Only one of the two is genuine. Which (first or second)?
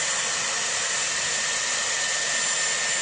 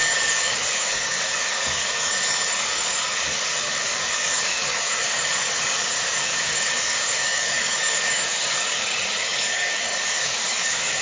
first